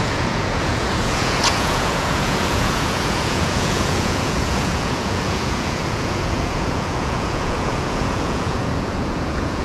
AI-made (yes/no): yes